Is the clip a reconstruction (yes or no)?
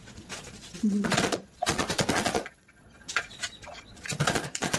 yes